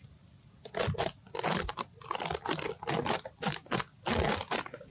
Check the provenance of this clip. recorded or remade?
recorded